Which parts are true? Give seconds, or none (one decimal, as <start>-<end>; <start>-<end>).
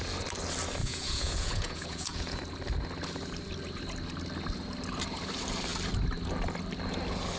0.0-0.8; 2.4-7.4